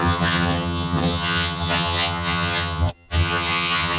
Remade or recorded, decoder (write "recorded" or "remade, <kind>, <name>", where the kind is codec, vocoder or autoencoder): remade, vocoder, HiFi-GAN